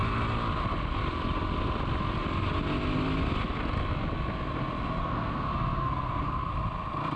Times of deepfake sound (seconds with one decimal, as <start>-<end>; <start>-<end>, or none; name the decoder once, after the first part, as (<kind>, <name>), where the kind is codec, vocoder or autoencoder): 5.0-6.5 (codec, SNAC)